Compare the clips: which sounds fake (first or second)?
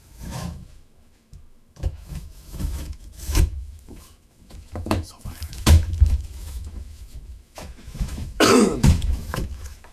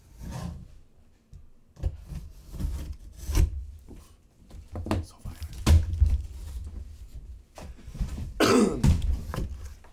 first